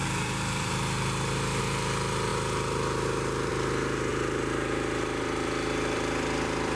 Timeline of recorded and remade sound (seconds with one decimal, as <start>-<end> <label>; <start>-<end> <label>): 0.0-1.6 remade; 1.6-4.1 recorded; 4.1-6.8 remade